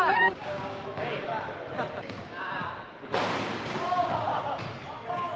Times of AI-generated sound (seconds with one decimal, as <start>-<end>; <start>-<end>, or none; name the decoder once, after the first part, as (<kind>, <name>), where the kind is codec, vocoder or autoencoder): 0.0-1.3 (codec, DAC); 2.0-2.6; 3.4-4.3